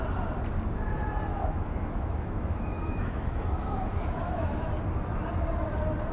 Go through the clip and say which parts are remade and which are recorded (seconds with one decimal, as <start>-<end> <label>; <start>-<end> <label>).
0.0-1.3 recorded; 1.3-4.7 remade; 4.7-6.1 recorded